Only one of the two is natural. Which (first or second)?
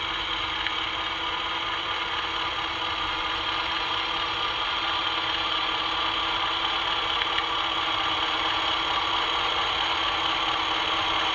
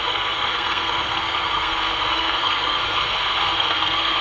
first